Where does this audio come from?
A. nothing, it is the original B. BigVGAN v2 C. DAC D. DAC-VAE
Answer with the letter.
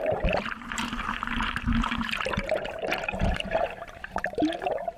B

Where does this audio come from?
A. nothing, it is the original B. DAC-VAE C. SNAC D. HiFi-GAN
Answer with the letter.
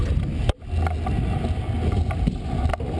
A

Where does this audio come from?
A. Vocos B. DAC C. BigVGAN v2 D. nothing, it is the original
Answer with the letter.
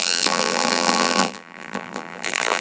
C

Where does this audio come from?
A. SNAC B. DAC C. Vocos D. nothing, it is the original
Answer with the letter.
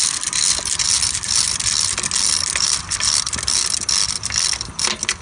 D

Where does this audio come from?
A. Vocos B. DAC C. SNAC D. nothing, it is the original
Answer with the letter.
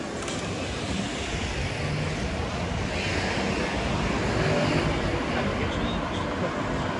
D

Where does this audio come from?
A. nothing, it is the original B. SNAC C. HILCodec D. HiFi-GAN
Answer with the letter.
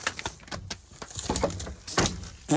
A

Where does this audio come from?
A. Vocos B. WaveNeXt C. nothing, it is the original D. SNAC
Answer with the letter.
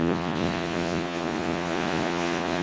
A